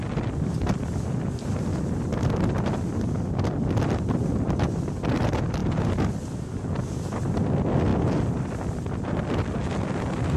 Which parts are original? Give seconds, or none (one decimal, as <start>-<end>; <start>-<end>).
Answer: 0.0-10.4